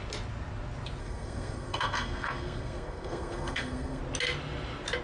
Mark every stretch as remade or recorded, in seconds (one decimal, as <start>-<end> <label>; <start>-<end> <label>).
0.0-1.0 recorded; 1.0-4.0 remade; 4.0-5.0 recorded